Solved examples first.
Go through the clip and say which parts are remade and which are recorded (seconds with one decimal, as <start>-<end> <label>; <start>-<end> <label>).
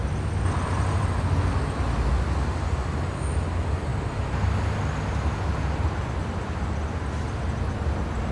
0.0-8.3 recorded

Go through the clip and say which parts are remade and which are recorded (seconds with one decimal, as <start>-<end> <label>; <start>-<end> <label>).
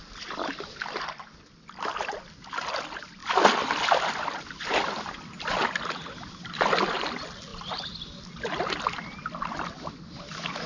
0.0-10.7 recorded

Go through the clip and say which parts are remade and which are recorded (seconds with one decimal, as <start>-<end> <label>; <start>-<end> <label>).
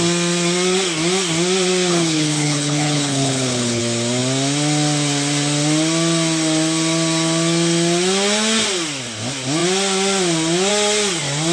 0.0-1.9 recorded; 1.9-3.8 remade; 3.8-11.5 recorded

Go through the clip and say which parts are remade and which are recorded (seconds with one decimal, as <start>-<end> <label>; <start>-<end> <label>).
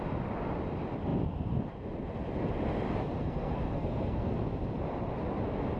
0.0-3.2 recorded; 3.2-4.3 remade; 4.3-5.8 recorded